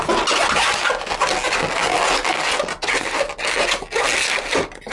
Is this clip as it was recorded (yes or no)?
yes